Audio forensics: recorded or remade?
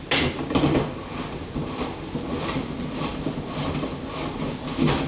recorded